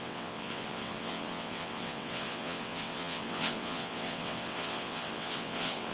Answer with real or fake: fake